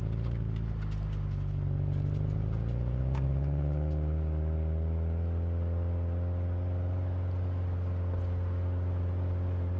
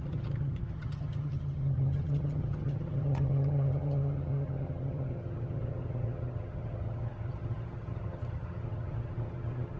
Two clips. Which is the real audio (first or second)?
first